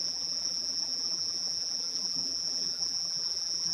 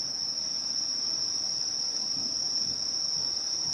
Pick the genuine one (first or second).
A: second